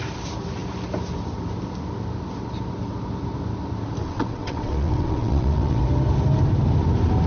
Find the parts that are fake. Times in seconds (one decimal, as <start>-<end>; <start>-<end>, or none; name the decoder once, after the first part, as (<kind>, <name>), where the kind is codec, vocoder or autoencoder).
4.0-5.8 (vocoder, WaveNeXt)